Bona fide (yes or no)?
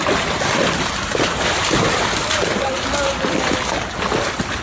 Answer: yes